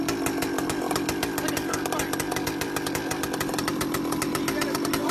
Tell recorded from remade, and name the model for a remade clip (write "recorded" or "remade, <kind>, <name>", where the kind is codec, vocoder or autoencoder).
recorded